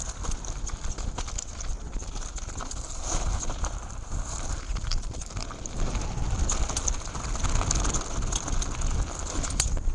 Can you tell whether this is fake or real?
real